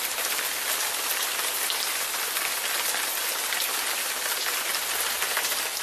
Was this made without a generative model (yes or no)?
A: yes